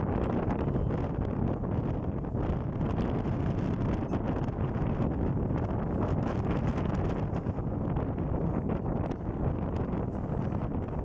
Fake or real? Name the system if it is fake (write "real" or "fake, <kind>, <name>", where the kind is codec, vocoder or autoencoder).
real